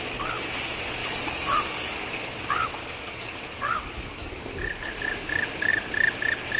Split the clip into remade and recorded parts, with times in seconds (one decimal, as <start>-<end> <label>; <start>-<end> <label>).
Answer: 0.0-1.0 recorded; 1.0-2.3 remade; 2.3-2.8 recorded; 2.8-4.9 remade; 4.9-6.6 recorded